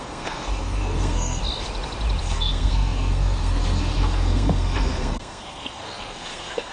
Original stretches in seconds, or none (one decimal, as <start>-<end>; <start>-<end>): 1.4-2.2